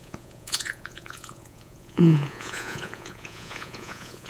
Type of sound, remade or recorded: remade